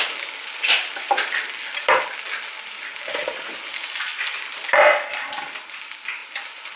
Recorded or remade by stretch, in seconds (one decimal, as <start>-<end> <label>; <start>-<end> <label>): 0.0-6.2 recorded; 6.2-6.8 remade